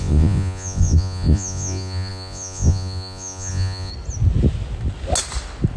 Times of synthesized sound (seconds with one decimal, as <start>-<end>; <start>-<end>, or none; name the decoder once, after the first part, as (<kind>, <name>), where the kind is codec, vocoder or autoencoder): 0.0-3.9 (vocoder, Vocos)